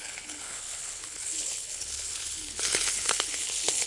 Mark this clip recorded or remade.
remade